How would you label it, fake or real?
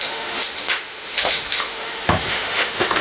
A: fake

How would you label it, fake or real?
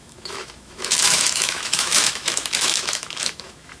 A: fake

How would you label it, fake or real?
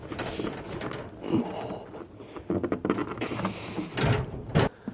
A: real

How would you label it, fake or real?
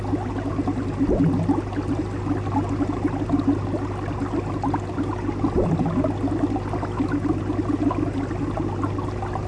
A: real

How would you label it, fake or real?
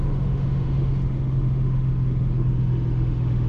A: fake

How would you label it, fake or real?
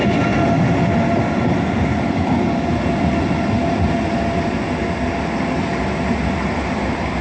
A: real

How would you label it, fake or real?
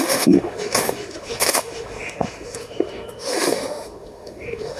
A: fake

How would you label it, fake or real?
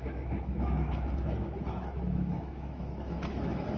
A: fake